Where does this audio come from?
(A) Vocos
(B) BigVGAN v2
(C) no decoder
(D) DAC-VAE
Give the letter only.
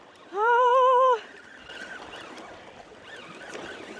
B